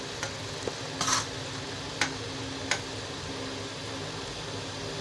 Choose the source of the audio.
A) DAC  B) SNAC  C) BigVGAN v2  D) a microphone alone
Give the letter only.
D